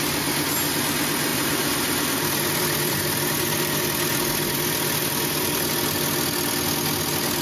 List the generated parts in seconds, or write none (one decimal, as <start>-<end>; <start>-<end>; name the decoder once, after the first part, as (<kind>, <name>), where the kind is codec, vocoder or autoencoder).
1.3-5.7 (vocoder, BigVGAN v2)